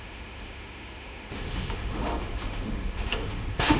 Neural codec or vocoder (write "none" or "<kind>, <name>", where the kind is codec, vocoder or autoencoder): autoencoder, DAC-VAE